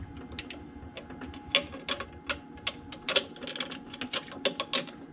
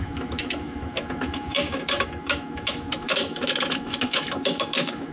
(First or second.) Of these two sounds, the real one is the first